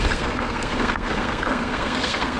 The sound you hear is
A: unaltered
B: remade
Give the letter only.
B